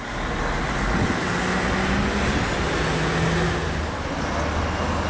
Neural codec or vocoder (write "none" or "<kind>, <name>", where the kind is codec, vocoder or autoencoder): none